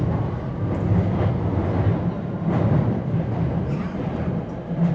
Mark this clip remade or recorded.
recorded